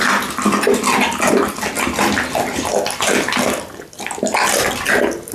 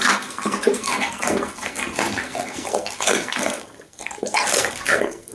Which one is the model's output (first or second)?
second